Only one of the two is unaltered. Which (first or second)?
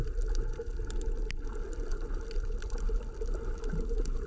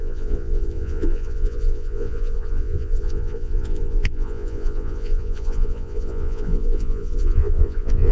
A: first